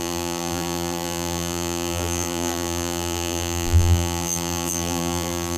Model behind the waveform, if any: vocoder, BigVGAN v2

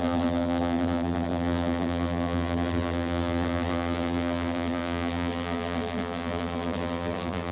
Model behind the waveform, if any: vocoder, BigVGAN v2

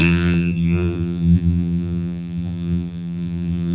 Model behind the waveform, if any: vocoder, BigVGAN v2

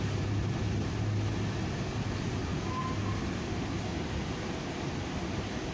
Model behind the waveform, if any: none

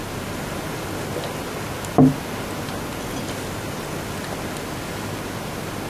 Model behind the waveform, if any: none